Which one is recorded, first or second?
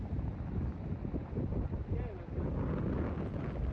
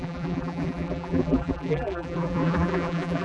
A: first